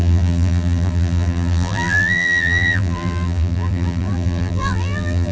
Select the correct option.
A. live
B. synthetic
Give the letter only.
B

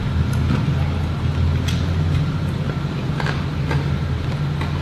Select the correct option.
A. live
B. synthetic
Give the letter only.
A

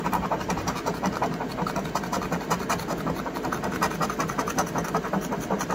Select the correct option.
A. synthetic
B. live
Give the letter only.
B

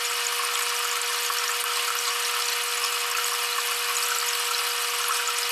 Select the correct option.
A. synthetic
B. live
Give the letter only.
B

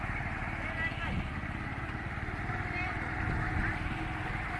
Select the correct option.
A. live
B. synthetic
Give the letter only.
A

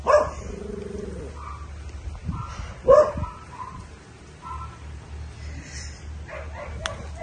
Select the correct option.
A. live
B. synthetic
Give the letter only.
A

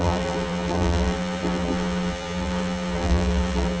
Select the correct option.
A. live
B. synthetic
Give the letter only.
B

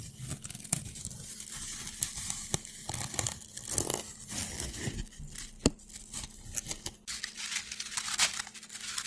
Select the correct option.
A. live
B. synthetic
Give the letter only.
A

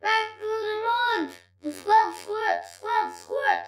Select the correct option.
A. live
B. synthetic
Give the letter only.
B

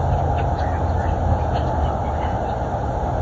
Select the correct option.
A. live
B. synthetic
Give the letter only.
A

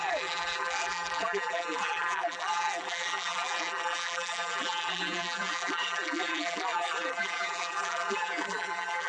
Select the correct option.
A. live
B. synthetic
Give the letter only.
B